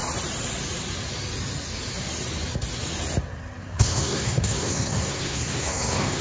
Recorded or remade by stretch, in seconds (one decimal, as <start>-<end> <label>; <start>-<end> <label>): 0.0-3.6 recorded; 3.6-6.2 remade